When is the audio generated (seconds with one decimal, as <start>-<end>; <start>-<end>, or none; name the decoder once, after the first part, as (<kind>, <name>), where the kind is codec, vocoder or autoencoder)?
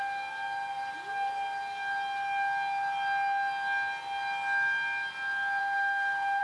5.6-6.4 (autoencoder, DAC-VAE)